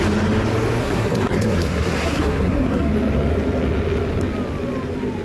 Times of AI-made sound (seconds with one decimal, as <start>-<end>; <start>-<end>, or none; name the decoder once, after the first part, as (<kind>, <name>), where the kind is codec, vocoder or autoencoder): 0.8-2.9 (codec, SNAC)